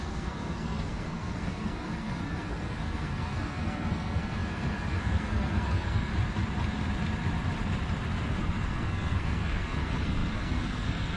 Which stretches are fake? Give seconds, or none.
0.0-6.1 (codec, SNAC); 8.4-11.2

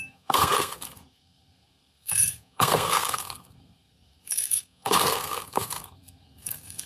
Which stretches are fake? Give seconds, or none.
0.0-6.9 (codec, SNAC)

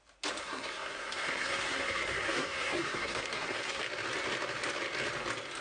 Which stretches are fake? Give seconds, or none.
0.4-3.8 (codec, SNAC)

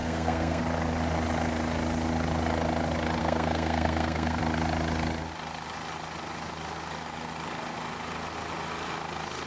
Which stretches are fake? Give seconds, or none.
0.0-0.6 (codec, SNAC); 3.2-4.4